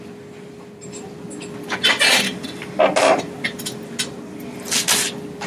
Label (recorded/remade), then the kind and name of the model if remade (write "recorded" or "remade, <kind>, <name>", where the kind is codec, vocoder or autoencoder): recorded